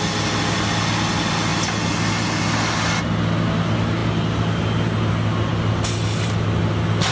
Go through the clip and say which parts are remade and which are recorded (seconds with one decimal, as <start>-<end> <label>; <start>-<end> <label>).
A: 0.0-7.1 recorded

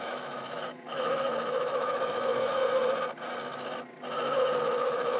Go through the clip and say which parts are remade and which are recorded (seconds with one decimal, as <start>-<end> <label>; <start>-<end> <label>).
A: 0.0-2.6 remade; 2.6-4.6 recorded; 4.6-5.2 remade

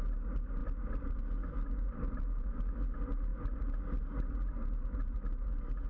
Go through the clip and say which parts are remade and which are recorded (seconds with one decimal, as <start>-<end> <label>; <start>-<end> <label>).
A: 0.0-5.9 recorded

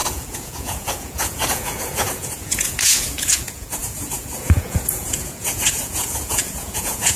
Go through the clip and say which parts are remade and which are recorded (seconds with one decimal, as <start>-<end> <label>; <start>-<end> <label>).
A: 0.0-7.2 remade